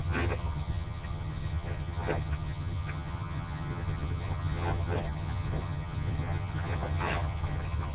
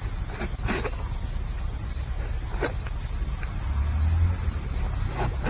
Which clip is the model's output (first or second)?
first